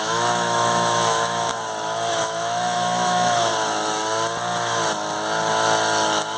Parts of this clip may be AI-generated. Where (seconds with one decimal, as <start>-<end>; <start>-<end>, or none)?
0.0-1.5; 2.1-3.5